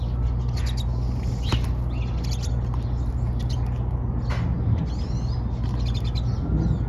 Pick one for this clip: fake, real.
real